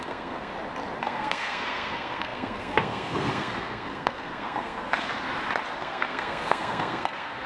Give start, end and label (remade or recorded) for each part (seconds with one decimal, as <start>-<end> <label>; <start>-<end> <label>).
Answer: 0.0-0.5 remade; 0.5-1.0 recorded; 1.0-5.1 remade; 5.1-5.8 recorded; 5.8-7.5 remade